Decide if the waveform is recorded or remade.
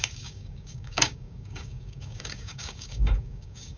remade